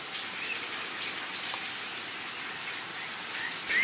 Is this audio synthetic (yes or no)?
no